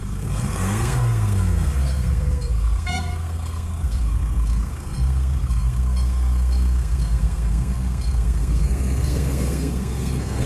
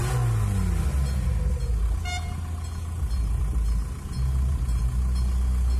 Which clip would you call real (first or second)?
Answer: second